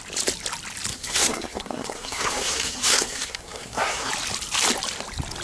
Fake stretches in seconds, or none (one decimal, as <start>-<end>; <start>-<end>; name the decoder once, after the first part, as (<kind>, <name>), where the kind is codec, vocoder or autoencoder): 0.9-4.1 (codec, SNAC)